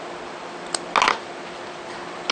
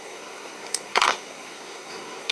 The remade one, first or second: second